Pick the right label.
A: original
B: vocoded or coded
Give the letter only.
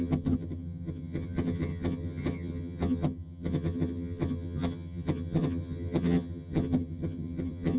B